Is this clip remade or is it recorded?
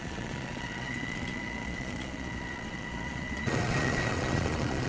remade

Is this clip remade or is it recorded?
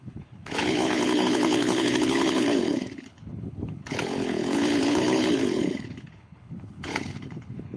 remade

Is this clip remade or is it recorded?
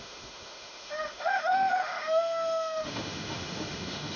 remade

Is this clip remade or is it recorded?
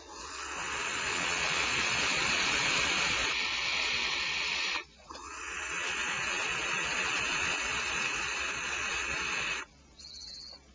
remade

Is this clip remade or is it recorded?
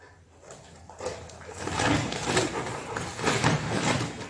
recorded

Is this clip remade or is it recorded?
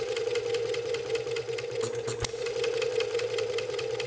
recorded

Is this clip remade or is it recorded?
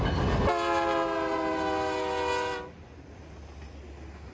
recorded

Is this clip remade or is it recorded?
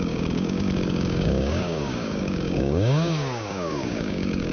remade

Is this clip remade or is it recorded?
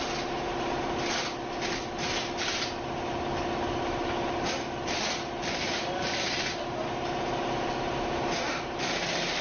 recorded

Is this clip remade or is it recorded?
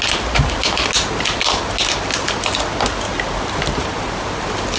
recorded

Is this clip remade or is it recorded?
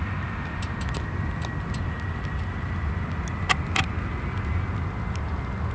recorded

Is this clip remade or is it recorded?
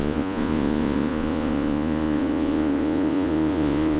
remade